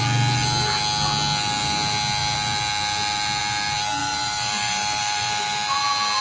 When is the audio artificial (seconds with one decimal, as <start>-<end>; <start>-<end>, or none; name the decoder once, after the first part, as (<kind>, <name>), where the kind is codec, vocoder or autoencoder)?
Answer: 4.0-5.8 (vocoder, BigVGAN v2)